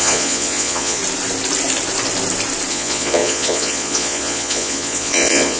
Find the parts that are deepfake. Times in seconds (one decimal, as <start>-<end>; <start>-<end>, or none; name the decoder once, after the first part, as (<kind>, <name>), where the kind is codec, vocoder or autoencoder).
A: 0.0-1.0 (vocoder, Vocos); 2.7-5.6